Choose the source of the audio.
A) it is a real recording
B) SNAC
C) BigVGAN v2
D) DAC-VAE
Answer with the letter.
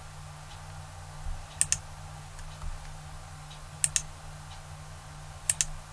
A